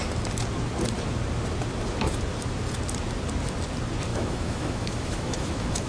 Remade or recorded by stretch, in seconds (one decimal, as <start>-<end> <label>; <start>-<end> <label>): 0.0-4.1 recorded; 4.1-5.9 remade